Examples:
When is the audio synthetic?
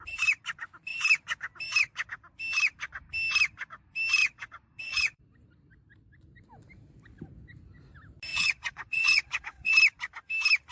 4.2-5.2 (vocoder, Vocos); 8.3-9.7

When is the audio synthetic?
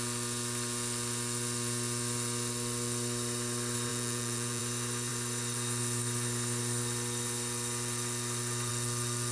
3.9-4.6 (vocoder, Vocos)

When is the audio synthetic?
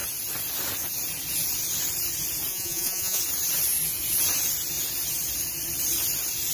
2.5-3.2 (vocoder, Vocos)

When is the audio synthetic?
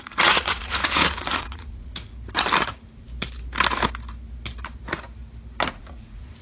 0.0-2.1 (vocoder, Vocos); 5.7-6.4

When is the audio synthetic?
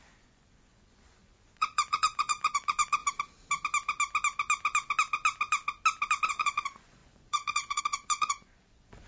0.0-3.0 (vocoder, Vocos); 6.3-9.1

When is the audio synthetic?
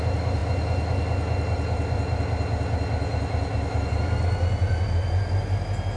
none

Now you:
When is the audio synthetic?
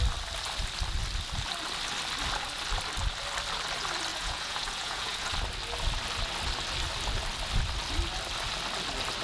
4.1-5.3 (vocoder, Vocos)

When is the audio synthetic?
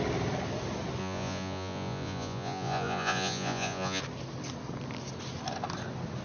1.0-4.0 (vocoder, Vocos)